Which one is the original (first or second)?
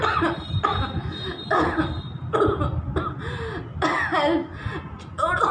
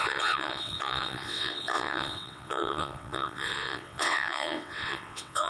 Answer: first